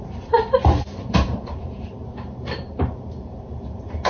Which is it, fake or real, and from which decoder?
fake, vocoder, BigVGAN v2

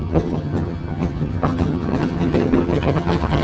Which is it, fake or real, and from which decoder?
fake, vocoder, HiFi-GAN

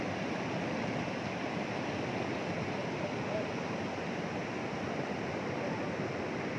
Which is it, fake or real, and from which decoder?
real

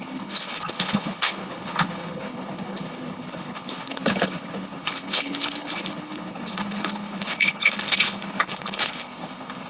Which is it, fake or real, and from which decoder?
fake, codec, HILCodec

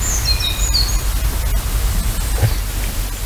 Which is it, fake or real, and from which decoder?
real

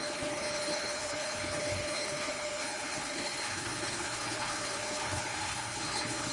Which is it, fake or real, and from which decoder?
fake, codec, HILCodec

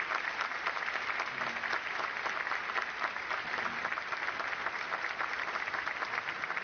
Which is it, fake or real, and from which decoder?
real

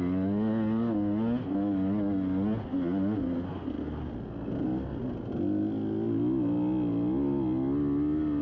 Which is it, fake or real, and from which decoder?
real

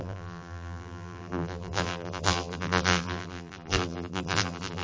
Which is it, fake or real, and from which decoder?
fake, vocoder, BigVGAN v2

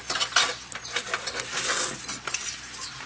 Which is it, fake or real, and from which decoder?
real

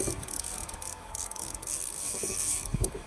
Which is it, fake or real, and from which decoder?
fake, codec, SNAC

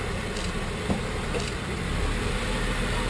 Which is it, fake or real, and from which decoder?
fake, vocoder, BigVGAN v2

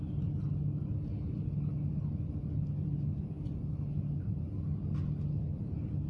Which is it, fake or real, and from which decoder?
real